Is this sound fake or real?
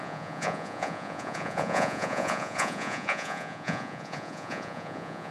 fake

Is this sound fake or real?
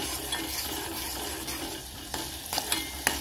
real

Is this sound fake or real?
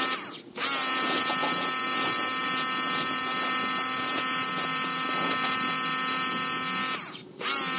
real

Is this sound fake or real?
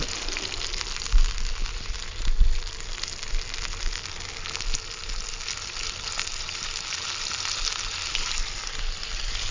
real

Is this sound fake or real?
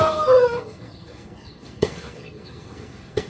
fake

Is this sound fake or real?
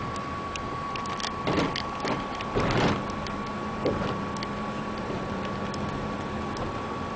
real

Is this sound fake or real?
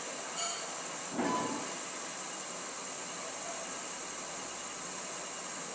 real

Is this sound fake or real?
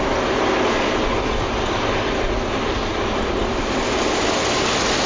real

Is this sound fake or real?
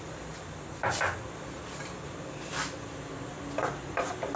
real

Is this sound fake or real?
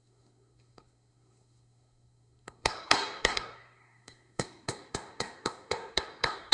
fake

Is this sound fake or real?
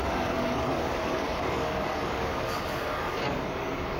fake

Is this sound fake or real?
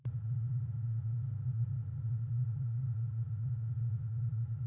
fake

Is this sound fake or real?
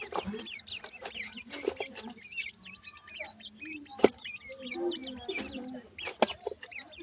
real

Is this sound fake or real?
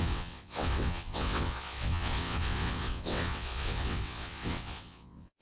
fake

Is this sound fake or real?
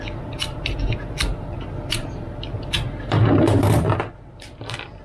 real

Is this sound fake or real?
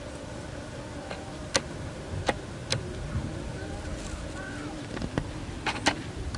real